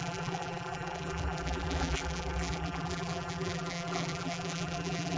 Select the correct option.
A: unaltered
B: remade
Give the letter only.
B